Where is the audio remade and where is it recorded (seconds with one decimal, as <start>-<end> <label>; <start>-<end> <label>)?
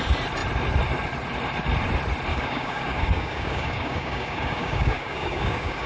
0.0-2.3 recorded; 2.3-5.9 remade